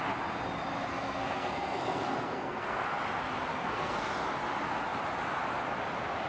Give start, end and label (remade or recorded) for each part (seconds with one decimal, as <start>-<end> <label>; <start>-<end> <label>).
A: 0.0-0.9 recorded; 0.9-2.8 remade; 2.8-3.5 recorded; 3.5-4.1 remade; 4.1-6.3 recorded